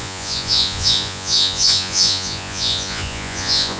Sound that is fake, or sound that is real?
fake